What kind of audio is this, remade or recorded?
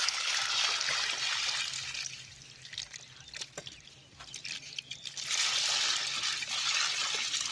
recorded